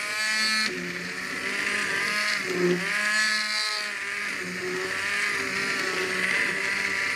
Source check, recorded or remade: recorded